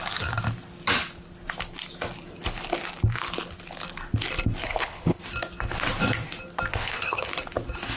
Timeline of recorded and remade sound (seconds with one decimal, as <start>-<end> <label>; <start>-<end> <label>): 0.0-4.6 recorded; 4.6-5.2 remade; 5.2-6.7 recorded; 6.7-7.3 remade; 7.3-8.0 recorded